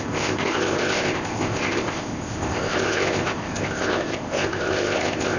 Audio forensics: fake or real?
fake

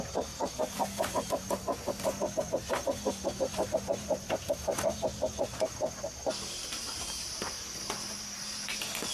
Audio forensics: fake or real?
fake